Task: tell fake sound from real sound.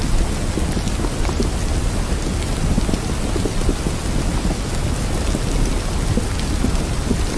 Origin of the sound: real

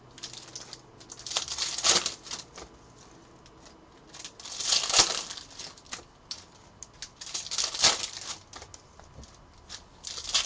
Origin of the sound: real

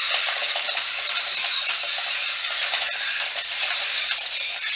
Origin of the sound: fake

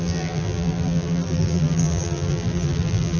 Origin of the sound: fake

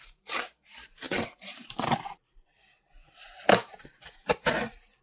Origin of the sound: fake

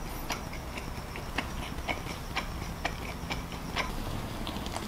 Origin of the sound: real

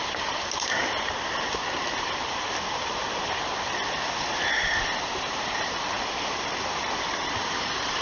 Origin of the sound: fake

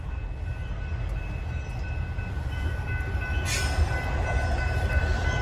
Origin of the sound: real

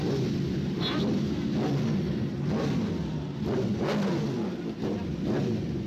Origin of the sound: real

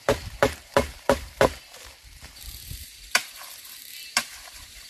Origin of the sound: fake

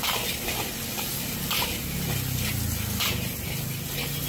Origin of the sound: real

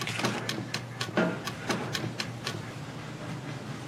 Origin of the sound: real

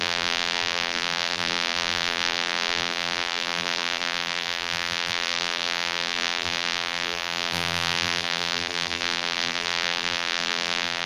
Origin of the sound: fake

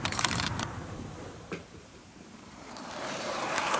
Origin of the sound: fake